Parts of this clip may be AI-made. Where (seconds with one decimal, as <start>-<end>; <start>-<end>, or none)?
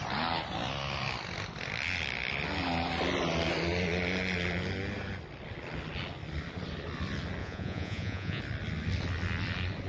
7.4-8.4